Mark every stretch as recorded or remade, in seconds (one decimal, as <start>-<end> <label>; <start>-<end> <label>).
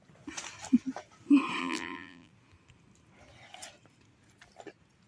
0.0-1.6 recorded; 1.6-2.3 remade; 2.3-5.1 recorded